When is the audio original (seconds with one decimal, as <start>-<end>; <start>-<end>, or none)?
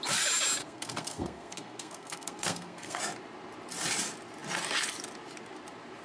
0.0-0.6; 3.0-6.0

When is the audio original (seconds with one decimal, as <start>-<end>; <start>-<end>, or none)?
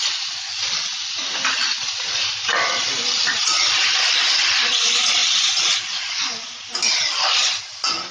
5.2-6.0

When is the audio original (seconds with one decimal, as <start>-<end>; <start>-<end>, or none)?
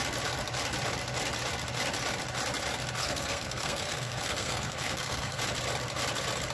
0.0-3.0; 5.4-6.5